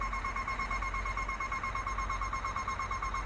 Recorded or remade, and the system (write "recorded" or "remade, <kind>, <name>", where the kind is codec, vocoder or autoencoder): recorded